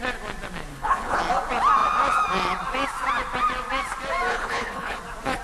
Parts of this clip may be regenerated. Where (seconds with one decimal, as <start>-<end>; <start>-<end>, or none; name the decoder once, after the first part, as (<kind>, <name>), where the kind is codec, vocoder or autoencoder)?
0.7-1.2 (codec, HILCodec); 4.3-5.0